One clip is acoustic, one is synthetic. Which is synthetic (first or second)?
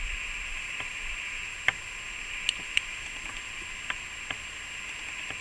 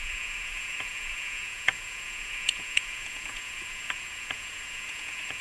second